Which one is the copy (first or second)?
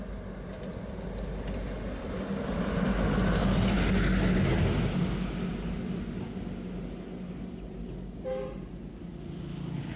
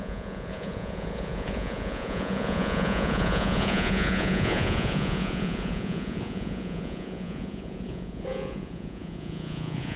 second